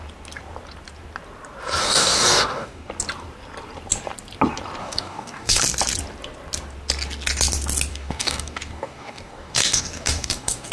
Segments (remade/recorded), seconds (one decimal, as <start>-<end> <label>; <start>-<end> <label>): 0.0-1.8 recorded; 1.8-2.9 remade; 2.9-4.8 recorded; 4.8-5.6 remade; 5.6-7.9 recorded; 7.9-10.7 remade